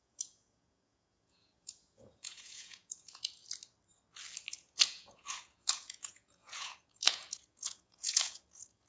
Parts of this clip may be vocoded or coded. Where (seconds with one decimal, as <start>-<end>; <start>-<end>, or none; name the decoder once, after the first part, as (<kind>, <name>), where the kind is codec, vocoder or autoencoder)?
0.0-3.4 (vocoder, Vocos); 4.5-8.9